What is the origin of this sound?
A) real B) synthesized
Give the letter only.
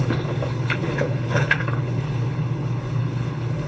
B